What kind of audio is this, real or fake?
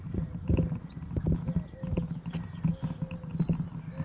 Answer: real